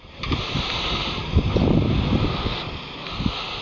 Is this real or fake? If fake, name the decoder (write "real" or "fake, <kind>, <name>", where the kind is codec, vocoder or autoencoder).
real